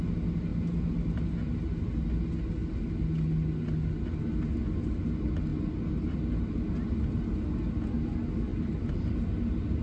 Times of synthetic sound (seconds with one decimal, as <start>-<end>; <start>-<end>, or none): 8.5-9.2